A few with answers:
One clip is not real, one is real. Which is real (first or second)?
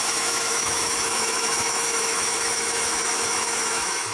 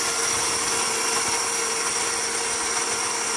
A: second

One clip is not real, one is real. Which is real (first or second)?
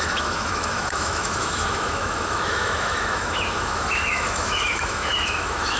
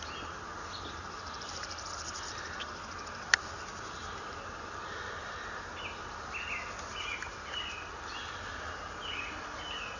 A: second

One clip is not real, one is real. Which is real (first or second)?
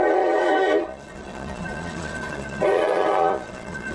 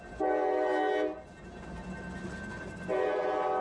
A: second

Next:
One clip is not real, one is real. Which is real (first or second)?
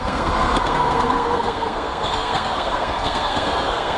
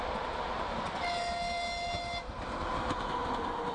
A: second